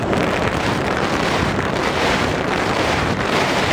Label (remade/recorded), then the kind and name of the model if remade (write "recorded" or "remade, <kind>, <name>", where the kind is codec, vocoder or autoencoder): remade, vocoder, BigVGAN v2